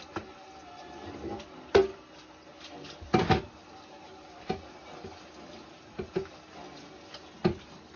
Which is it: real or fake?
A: real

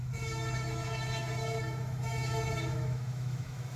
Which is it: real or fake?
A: fake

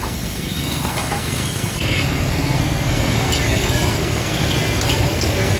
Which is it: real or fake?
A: fake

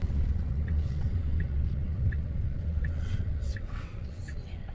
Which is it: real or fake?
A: fake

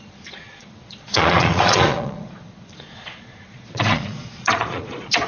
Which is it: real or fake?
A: fake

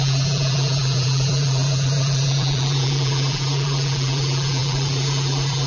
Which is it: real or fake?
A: fake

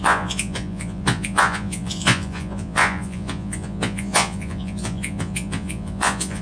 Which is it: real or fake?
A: fake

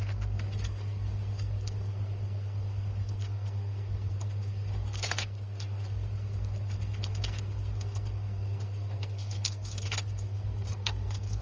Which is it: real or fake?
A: fake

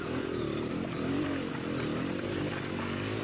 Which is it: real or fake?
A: real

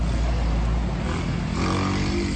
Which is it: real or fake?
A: real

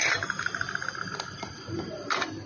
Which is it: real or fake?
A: real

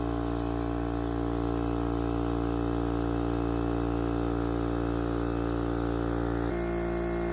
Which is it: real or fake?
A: real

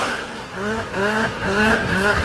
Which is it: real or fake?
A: fake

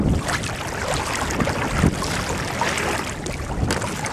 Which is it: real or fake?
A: real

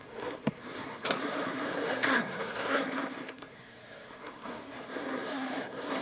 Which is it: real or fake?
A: fake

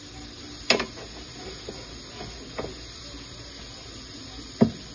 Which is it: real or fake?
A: real